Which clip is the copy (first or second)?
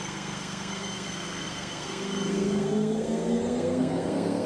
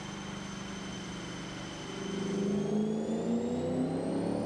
first